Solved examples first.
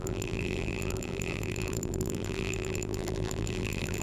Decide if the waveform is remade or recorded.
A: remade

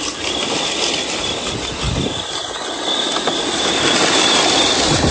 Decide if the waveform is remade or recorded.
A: recorded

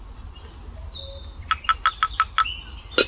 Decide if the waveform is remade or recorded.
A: recorded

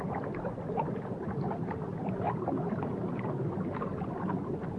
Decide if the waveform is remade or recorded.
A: remade